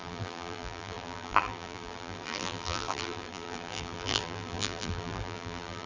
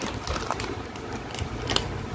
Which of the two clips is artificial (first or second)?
first